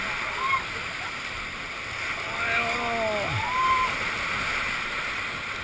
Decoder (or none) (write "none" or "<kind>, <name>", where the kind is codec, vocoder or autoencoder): none